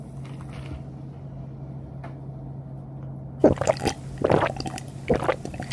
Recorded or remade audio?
recorded